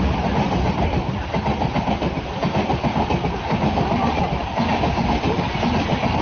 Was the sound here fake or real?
real